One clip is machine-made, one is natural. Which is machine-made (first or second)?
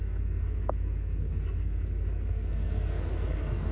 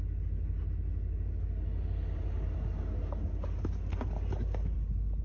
first